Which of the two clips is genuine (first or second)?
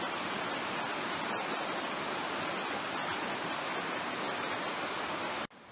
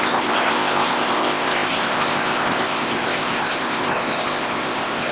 first